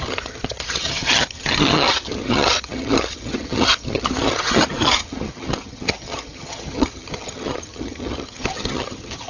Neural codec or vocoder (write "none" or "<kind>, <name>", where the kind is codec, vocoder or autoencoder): vocoder, HiFi-GAN